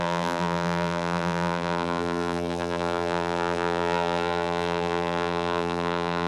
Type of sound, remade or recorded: remade